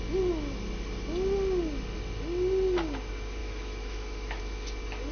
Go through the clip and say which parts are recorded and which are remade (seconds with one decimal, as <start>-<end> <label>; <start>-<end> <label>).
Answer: 0.0-3.4 recorded; 3.4-4.4 remade; 4.4-5.1 recorded